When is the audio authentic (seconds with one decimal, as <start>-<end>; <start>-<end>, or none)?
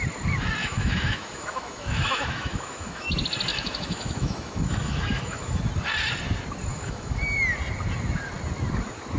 0.0-0.6; 3.1-3.5; 5.6-6.7; 7.2-9.2